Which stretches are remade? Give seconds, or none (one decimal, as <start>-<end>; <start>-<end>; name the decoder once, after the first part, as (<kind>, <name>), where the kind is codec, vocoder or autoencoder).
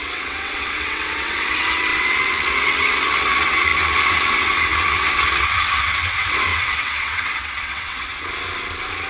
0.0-8.1 (vocoder, WaveNeXt)